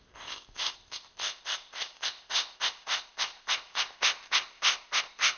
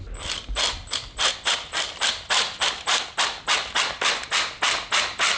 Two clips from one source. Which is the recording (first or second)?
second